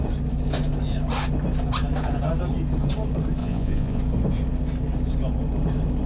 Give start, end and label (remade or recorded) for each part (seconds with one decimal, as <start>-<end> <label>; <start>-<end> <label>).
0.0-3.4 recorded; 3.4-4.0 remade; 4.0-6.1 recorded